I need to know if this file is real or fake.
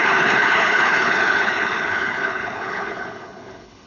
fake